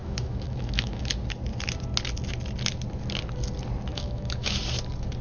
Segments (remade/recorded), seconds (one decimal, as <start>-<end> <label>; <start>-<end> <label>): 0.0-1.1 remade; 1.1-3.9 recorded; 3.9-4.6 remade; 4.6-5.2 recorded